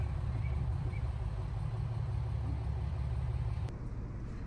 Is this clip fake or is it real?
fake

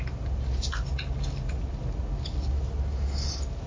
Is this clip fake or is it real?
real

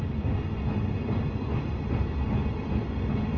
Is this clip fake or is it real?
real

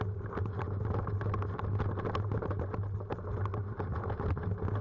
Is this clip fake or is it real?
real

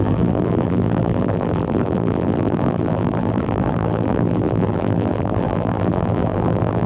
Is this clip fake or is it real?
fake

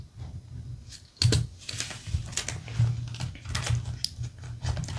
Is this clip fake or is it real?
real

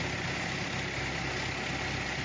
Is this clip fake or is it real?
real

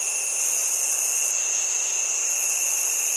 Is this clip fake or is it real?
real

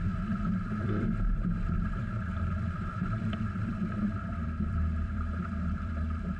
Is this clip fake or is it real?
fake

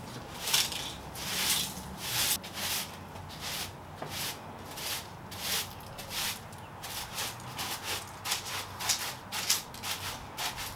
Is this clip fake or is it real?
real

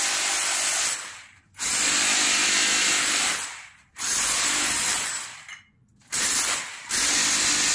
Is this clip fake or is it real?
real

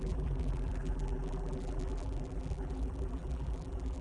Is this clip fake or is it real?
fake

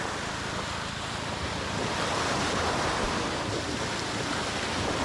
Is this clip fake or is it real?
real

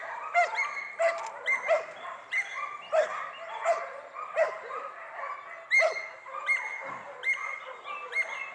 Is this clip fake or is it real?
real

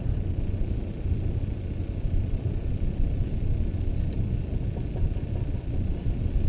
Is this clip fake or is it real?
real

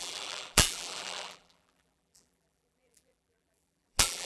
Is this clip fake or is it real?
fake